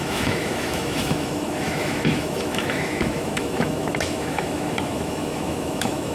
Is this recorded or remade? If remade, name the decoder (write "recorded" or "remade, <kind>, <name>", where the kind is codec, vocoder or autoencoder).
remade, autoencoder, DAC-VAE